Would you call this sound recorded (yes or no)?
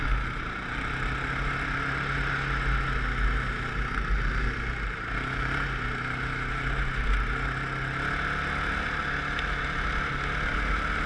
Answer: yes